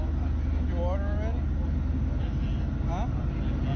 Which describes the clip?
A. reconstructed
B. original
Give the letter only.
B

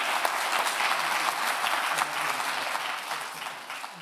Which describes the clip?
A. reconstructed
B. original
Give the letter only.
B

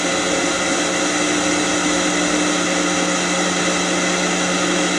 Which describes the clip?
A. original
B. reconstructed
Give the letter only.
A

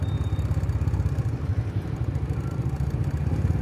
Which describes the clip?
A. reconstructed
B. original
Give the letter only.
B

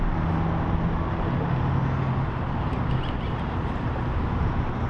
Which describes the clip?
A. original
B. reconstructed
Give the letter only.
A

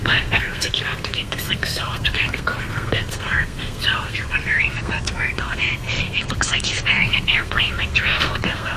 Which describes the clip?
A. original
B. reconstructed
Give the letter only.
B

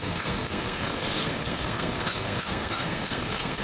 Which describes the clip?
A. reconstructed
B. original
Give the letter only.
A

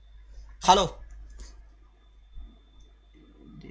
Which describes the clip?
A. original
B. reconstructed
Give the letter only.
A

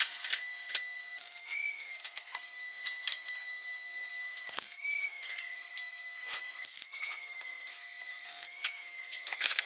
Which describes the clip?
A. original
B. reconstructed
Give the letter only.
B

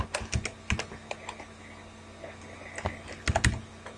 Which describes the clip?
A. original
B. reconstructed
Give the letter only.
A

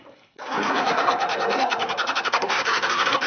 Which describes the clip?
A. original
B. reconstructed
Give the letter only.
B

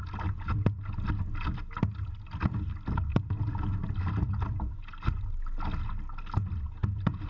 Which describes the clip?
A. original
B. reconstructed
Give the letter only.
A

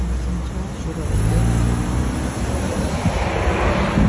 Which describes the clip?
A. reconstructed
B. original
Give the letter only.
B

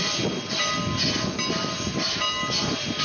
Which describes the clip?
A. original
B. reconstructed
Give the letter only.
A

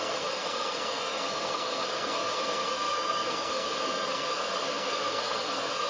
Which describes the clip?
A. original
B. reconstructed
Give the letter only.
B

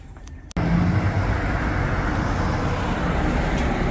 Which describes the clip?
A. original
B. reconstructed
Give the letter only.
A